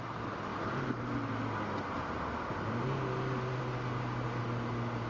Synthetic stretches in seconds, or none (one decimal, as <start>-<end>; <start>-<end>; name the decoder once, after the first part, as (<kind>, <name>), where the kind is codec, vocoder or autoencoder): none